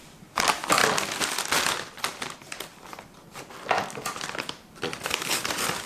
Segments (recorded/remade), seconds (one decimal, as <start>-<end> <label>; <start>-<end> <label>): 0.0-0.8 remade; 0.8-1.5 recorded; 1.5-5.9 remade